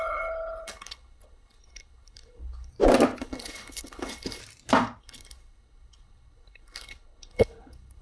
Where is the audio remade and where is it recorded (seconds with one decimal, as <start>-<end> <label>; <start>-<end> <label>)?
0.0-2.7 remade; 2.7-3.2 recorded; 3.2-4.4 remade; 4.4-5.0 recorded; 5.0-8.0 remade